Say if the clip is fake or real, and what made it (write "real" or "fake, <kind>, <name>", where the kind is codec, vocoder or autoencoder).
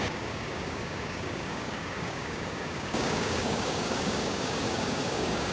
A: fake, codec, DAC